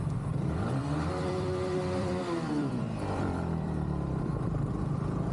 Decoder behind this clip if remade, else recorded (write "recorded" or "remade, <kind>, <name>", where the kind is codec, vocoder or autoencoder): remade, vocoder, BigVGAN v2